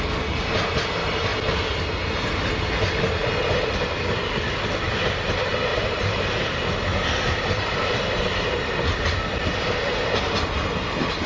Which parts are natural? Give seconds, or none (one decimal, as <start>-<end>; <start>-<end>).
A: 0.0-11.3